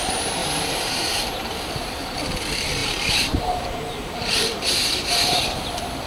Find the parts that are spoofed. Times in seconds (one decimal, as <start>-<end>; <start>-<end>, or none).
0.4-1.1; 2.8-5.4